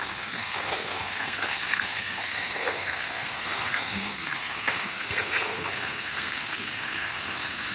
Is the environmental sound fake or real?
fake